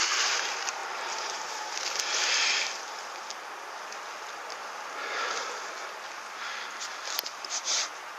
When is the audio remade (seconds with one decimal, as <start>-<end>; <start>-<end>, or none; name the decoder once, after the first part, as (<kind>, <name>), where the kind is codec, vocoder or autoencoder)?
none